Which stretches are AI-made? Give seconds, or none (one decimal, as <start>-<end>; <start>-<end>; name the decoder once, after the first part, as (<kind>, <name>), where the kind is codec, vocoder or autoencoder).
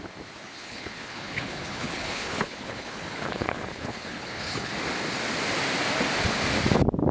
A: 0.4-4.7 (codec, HILCodec)